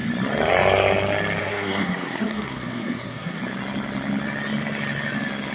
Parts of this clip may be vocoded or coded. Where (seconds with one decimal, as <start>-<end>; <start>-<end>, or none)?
1.4-3.4

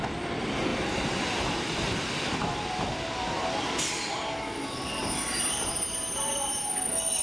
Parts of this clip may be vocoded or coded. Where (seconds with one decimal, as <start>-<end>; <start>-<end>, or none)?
0.7-2.0; 5.0-6.7

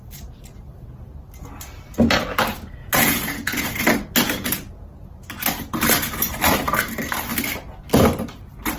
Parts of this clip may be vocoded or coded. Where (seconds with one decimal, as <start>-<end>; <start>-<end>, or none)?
2.8-3.8

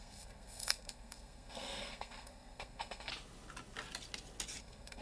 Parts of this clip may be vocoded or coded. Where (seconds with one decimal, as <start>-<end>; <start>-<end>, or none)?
0.0-3.1; 4.6-5.0

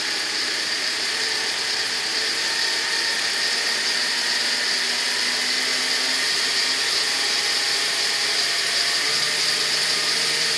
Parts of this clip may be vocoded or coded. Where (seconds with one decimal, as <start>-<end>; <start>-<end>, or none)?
0.0-4.4; 6.9-9.1; 9.8-10.6